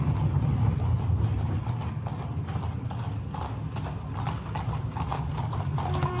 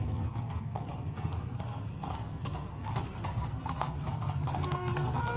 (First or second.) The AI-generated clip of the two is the second